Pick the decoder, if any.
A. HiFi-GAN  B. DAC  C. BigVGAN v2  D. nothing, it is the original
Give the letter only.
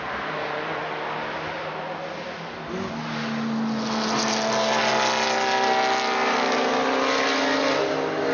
D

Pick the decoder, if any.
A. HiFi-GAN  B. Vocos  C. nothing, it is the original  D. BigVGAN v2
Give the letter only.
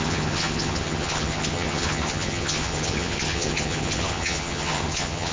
A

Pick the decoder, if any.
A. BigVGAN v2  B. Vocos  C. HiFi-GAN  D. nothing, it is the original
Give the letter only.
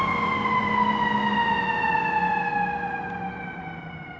D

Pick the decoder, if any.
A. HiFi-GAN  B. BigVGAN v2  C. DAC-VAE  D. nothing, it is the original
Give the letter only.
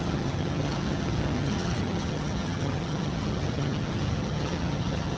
A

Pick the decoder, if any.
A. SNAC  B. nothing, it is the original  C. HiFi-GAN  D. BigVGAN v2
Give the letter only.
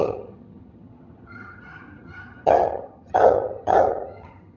C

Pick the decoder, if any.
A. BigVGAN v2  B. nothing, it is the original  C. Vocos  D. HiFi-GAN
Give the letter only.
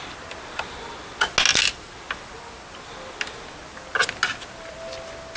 B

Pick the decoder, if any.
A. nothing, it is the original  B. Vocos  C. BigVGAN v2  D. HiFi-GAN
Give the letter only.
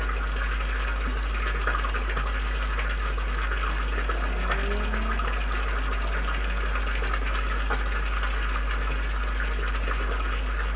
A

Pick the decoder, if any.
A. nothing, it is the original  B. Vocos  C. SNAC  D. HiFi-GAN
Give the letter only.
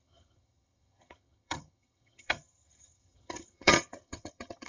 D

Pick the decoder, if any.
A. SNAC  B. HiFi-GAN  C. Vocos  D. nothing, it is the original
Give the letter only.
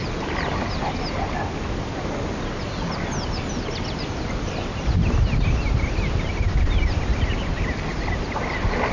D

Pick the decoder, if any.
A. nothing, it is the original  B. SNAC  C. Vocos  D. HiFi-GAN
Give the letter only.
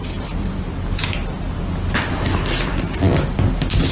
A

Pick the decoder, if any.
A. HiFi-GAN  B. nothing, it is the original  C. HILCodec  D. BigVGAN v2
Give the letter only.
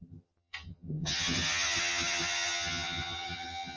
A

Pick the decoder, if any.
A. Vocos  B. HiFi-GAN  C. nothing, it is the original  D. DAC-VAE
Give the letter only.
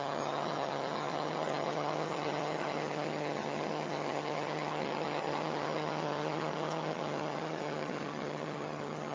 B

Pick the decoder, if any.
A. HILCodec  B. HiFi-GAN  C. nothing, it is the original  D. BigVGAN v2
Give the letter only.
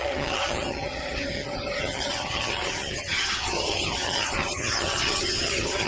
B